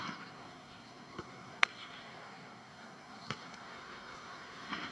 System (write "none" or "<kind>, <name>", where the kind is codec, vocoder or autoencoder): codec, SNAC